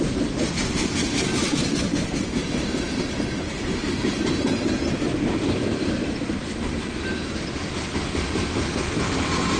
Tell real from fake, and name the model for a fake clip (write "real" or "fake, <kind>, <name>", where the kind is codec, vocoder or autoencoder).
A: real